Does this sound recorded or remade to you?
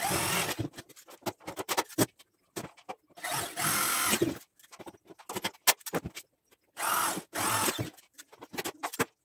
recorded